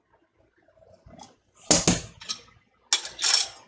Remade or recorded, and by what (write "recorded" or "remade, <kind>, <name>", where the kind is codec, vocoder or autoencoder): recorded